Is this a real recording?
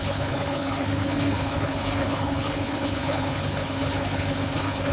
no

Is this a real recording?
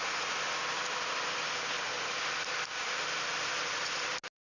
yes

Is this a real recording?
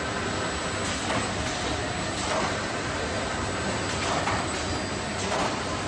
yes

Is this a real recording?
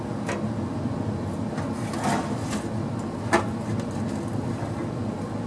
yes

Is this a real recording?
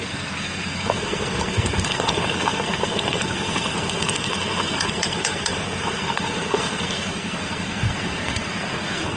no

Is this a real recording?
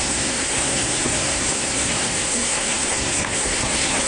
no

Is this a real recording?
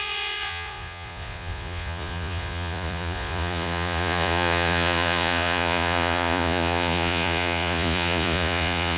no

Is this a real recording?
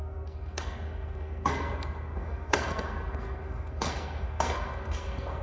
no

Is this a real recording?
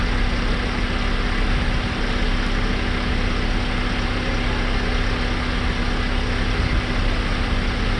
yes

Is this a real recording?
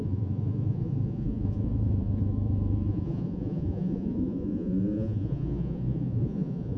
no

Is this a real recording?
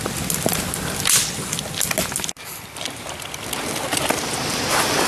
yes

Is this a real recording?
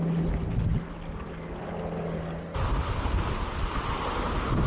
yes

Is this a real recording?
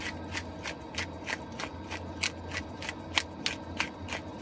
yes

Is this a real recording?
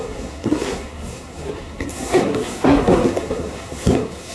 no